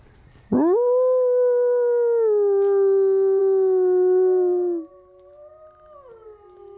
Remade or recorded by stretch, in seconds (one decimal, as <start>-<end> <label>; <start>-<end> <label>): 0.0-6.8 recorded